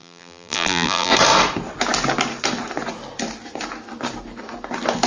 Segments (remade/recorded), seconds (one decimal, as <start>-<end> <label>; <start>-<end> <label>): 0.0-1.1 remade; 1.1-5.1 recorded